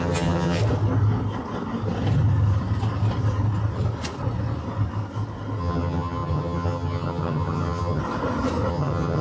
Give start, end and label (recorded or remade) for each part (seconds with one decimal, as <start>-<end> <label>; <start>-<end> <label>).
0.0-0.6 remade; 0.6-5.6 recorded; 5.6-8.0 remade; 8.0-8.7 recorded; 8.7-9.2 remade